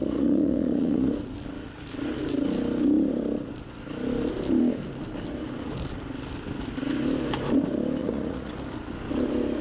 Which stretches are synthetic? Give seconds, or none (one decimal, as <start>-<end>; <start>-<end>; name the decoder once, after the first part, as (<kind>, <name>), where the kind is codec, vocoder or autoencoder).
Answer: 0.0-1.1 (vocoder, Vocos); 8.0-8.5